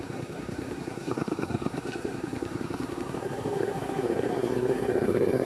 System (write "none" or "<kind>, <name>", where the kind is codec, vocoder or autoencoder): codec, SNAC